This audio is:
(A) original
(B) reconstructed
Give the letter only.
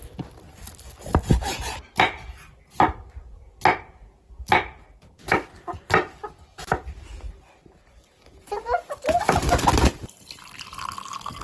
A